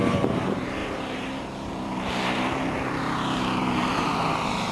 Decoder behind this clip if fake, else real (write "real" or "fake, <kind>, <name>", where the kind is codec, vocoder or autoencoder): fake, vocoder, BigVGAN v2